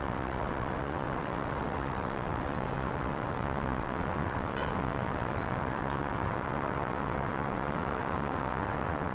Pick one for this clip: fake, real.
fake